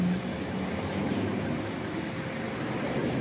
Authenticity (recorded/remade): recorded